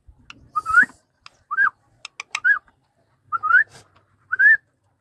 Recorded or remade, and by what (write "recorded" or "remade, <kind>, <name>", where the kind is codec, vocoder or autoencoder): recorded